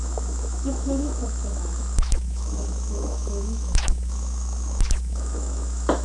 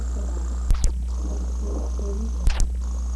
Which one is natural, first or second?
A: second